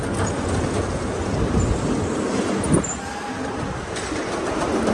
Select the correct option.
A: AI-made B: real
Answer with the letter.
B